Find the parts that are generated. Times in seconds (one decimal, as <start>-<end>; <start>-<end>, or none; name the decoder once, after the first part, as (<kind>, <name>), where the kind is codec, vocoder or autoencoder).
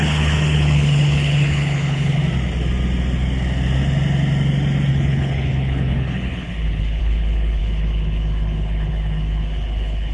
0.0-2.2 (codec, HILCodec); 4.9-10.1